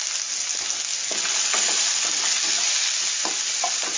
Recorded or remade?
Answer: recorded